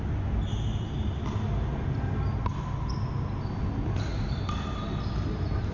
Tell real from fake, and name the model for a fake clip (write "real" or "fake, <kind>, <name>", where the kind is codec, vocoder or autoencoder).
real